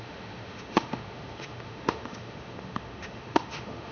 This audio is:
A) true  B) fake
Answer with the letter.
B